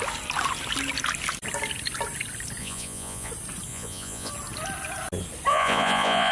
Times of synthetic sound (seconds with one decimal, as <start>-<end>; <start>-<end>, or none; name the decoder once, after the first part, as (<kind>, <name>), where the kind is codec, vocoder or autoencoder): 2.6-3.3 (vocoder, Vocos); 3.7-4.3; 5.5-6.3